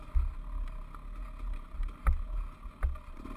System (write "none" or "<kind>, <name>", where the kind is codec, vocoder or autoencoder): none